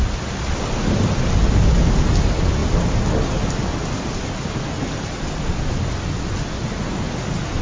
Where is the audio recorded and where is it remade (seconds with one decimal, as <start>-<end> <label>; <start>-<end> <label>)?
0.0-7.6 recorded